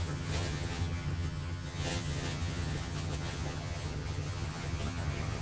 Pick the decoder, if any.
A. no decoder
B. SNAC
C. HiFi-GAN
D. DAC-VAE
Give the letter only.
C